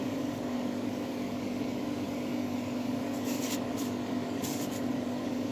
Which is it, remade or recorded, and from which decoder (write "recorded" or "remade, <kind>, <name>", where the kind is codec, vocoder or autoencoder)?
remade, codec, DAC